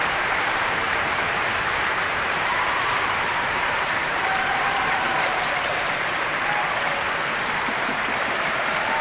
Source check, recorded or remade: remade